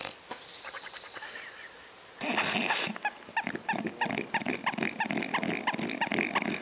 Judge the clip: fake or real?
real